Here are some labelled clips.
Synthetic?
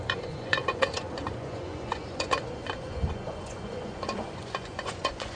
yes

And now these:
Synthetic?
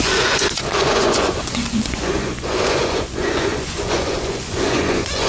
yes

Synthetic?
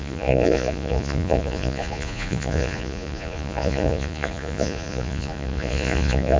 yes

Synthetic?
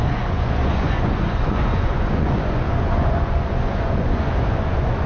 yes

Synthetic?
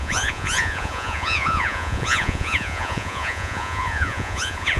yes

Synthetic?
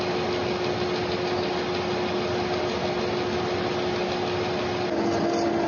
no